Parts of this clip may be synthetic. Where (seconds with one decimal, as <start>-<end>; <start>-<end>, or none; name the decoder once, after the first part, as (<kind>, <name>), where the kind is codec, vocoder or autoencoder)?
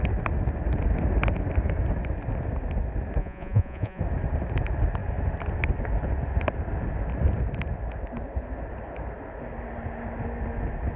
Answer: 3.2-4.0 (vocoder, Vocos)